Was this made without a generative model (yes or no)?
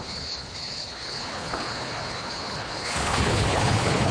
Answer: no